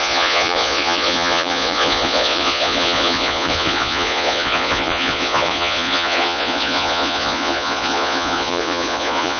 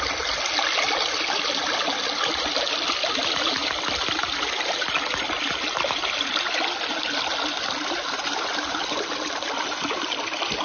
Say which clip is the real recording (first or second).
second